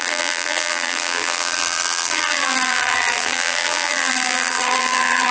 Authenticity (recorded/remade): remade